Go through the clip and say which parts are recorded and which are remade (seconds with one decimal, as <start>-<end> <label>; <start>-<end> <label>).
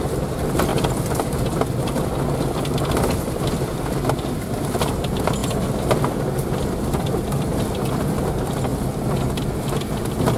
0.0-0.7 remade; 0.7-2.4 recorded; 2.4-5.4 remade; 5.4-6.6 recorded; 6.6-8.7 remade; 8.7-9.4 recorded; 9.4-10.4 remade